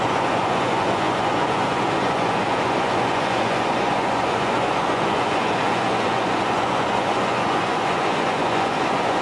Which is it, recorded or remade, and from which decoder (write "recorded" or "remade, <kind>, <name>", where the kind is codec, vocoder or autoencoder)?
remade, vocoder, Vocos